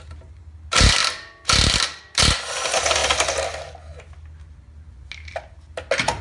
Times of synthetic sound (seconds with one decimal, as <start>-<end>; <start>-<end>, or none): none